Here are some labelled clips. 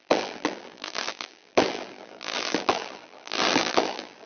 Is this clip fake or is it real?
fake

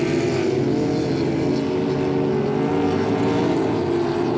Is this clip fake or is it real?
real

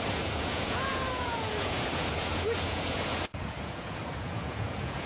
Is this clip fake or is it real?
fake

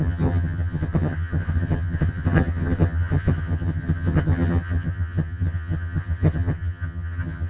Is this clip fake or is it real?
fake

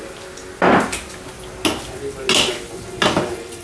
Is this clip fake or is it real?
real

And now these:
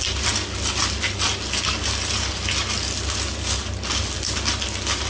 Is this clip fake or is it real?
real